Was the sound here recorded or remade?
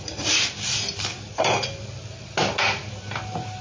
recorded